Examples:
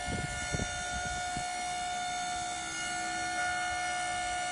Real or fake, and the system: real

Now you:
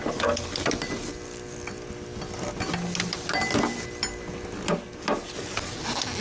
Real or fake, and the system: real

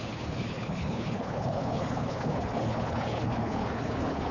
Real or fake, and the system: fake, codec, HILCodec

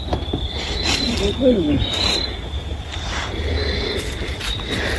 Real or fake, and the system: real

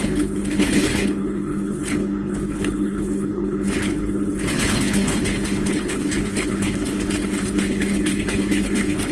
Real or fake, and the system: fake, codec, HILCodec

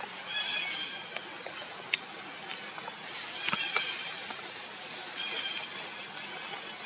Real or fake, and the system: real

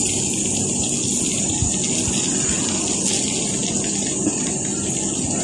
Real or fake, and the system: real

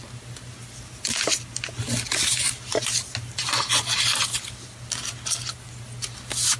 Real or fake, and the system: real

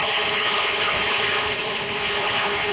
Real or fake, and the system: fake, codec, HILCodec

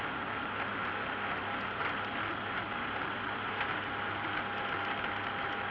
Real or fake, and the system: real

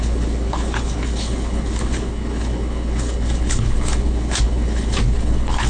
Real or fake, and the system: fake, codec, HILCodec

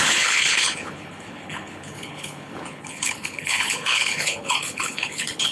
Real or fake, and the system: fake, codec, HILCodec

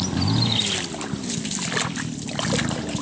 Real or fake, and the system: real